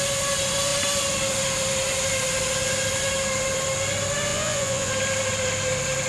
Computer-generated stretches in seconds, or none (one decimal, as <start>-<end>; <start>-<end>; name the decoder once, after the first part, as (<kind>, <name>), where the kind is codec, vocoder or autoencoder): 4.3-4.9 (vocoder, Vocos)

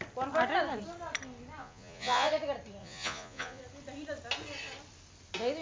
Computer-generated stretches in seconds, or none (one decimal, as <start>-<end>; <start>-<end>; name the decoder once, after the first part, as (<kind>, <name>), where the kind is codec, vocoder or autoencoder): 1.6-2.3 (vocoder, Vocos); 2.8-3.6

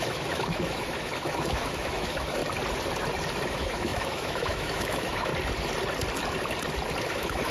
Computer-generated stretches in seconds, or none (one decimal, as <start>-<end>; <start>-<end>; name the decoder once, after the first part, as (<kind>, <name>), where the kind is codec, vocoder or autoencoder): 0.0-2.4 (autoencoder, DAC-VAE); 3.5-5.3; 7.0-7.5

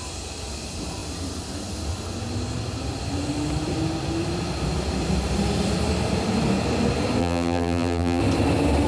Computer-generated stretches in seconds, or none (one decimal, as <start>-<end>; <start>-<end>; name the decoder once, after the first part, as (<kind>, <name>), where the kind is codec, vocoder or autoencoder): 7.2-8.2 (vocoder, BigVGAN v2)

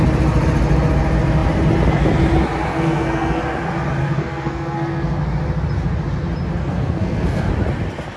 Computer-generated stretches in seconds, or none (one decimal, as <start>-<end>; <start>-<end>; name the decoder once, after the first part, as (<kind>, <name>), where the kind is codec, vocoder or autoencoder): 2.7-3.4 (codec, SNAC); 4.0-5.2; 6.6-7.5

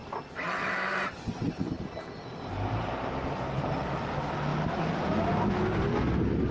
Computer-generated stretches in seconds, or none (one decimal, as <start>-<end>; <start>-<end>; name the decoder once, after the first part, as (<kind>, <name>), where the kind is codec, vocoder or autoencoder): 0.7-1.6 (vocoder, BigVGAN v2); 2.5-4.5; 5.8-6.5

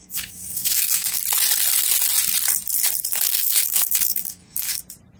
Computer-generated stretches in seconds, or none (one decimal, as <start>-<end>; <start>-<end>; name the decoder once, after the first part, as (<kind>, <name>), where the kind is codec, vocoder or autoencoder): 0.0-1.2 (codec, SNAC); 3.3-4.8

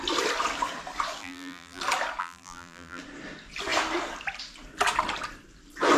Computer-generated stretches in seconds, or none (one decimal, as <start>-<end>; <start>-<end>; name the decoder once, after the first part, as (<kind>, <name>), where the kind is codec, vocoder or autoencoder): 1.2-1.8 (vocoder, BigVGAN v2); 2.2-3.0